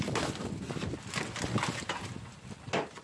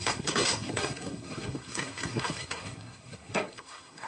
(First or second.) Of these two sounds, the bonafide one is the first